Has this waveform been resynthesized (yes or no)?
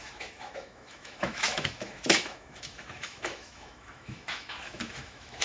yes